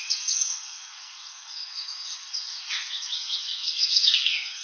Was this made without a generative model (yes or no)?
no